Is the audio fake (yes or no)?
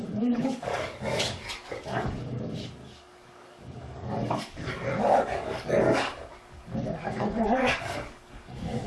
yes